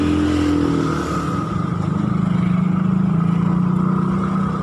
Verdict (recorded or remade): recorded